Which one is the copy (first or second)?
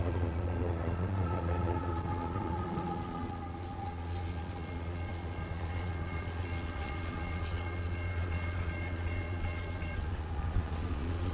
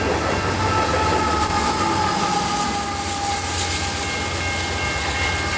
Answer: first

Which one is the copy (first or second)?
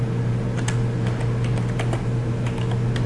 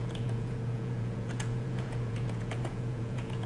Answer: second